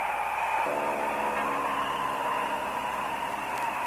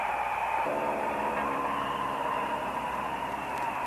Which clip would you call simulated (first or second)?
second